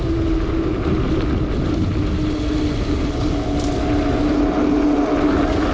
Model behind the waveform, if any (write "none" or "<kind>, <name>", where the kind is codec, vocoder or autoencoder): none